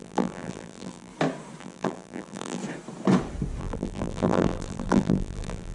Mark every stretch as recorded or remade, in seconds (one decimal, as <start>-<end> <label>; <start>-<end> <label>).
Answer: 0.0-1.1 remade; 1.1-1.6 recorded; 1.6-2.6 remade; 2.6-3.6 recorded; 3.6-5.7 remade